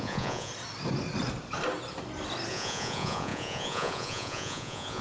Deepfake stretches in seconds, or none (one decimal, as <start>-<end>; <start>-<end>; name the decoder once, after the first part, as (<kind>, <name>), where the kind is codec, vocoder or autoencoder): 0.0-0.5 (vocoder, Vocos); 2.5-5.0